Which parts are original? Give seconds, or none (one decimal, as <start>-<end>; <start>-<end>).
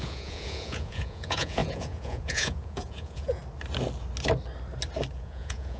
3.4-5.1